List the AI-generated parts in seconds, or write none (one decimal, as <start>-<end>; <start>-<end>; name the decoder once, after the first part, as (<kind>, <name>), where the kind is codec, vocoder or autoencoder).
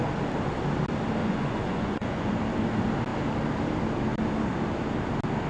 1.2-2.3 (vocoder, Vocos)